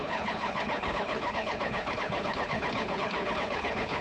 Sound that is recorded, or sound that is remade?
remade